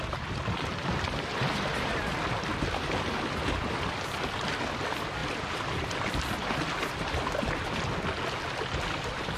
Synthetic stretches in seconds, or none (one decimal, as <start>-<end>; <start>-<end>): none